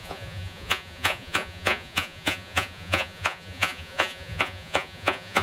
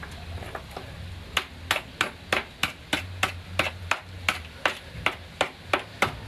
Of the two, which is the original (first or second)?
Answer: second